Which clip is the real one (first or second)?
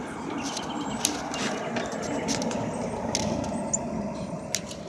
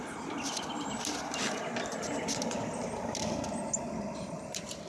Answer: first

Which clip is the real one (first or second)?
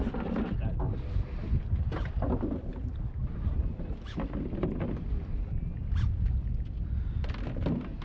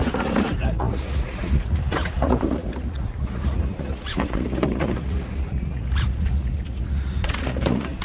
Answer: first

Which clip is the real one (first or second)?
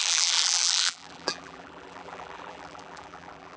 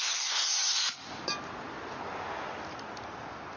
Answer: second